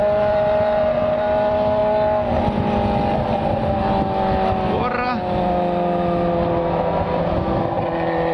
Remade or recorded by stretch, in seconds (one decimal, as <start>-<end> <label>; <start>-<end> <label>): 0.0-0.8 remade; 0.8-8.3 recorded